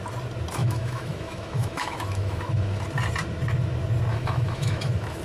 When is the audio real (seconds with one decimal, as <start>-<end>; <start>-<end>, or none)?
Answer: 0.0-0.6; 2.8-4.1